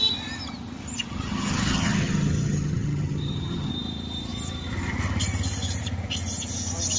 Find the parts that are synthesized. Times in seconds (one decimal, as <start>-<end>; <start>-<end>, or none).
1.1-3.7